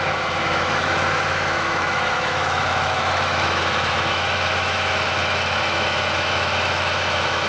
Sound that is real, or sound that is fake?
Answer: fake